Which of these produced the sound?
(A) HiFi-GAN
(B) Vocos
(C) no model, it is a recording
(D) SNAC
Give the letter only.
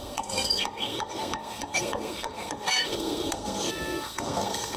D